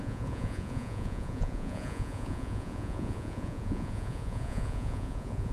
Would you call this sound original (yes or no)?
no